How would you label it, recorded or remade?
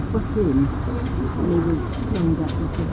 recorded